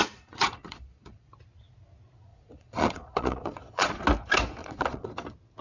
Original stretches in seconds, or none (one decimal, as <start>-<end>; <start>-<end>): 1.3-2.3; 4.0-4.6; 5.1-5.6